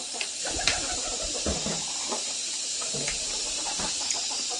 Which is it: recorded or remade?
remade